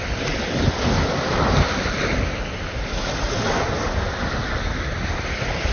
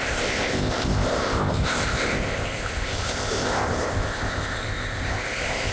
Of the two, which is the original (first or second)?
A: first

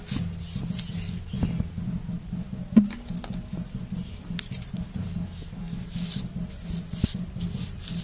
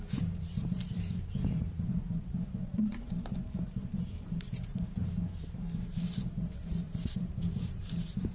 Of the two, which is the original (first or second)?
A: first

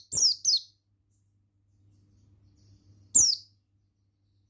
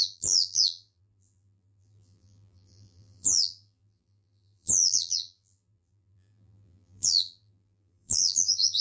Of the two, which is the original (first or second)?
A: first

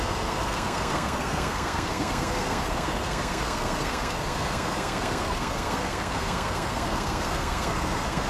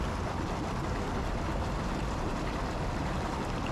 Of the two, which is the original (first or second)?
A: second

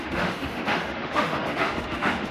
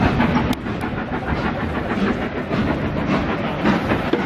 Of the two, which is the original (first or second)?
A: second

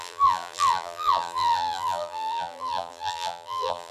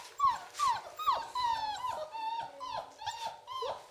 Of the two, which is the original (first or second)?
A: second